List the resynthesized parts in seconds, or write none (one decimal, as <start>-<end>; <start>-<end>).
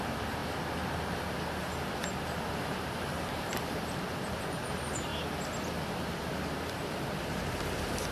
0.0-0.4; 2.2-5.1; 5.9-8.1